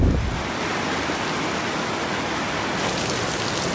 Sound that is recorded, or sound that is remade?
recorded